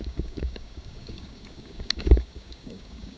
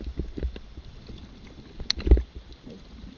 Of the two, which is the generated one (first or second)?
first